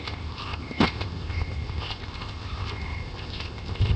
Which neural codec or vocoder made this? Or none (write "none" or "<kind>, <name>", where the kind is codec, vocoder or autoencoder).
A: codec, ZipCodec